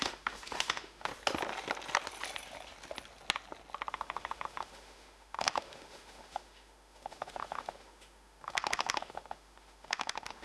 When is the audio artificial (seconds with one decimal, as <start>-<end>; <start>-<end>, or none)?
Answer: 0.0-1.1; 3.9-10.4